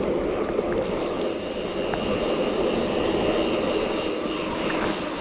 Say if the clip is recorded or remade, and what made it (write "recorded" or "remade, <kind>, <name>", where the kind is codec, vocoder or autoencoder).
remade, vocoder, BigVGAN v2